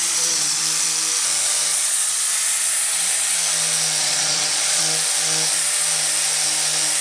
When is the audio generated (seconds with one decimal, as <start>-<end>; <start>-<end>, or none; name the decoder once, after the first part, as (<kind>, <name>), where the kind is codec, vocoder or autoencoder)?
0.0-0.6 (vocoder, Vocos); 1.7-2.3; 4.0-4.8